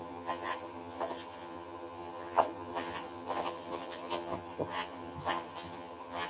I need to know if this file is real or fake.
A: fake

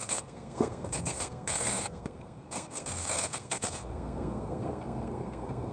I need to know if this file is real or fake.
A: fake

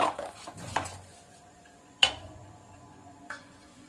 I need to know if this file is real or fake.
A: fake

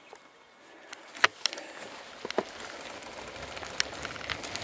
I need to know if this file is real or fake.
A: real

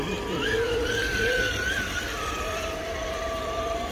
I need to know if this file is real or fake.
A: fake